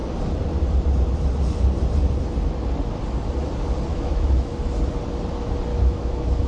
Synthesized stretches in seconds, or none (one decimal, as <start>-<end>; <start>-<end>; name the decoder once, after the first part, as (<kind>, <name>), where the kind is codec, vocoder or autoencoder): 3.9-4.5 (autoencoder, DAC-VAE); 5.7-6.5